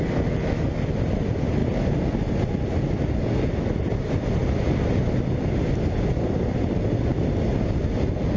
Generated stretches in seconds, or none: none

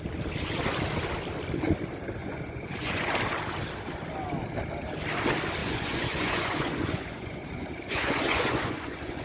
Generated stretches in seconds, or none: 2.2-3.1 (vocoder, Vocos); 5.6-9.2

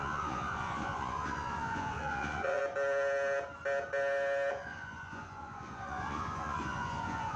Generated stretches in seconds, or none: 0.0-2.6 (vocoder, Vocos); 4.5-7.4